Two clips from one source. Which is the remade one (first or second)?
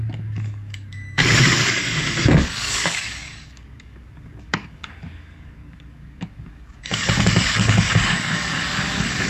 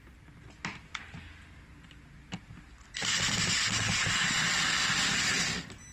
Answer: first